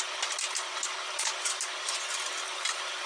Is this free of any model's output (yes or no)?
yes